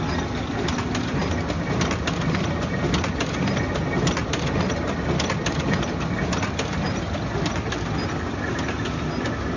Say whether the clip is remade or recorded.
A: recorded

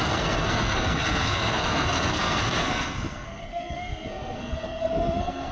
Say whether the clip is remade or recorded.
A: remade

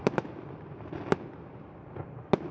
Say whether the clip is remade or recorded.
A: recorded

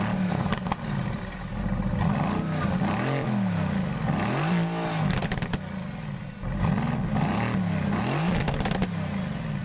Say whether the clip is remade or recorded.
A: recorded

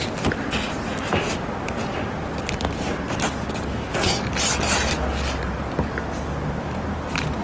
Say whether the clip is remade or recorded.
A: recorded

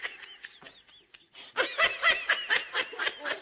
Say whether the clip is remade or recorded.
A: recorded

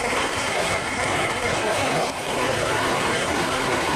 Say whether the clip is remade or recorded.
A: remade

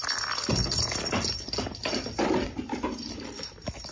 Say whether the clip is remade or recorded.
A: recorded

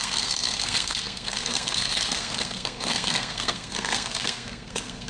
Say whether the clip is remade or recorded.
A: remade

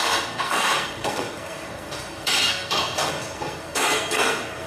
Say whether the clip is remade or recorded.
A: remade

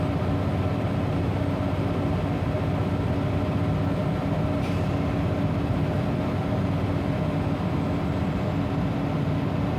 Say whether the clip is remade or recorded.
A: recorded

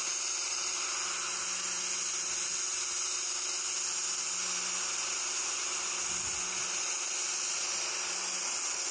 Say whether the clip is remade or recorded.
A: recorded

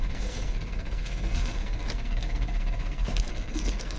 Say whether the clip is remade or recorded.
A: remade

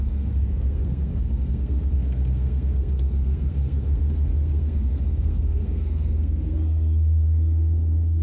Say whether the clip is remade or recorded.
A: remade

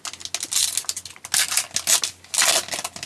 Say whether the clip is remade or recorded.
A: recorded